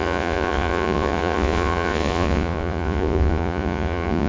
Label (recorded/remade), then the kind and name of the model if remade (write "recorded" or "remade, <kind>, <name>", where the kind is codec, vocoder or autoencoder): remade, vocoder, Vocos